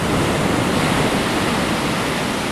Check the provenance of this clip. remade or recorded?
recorded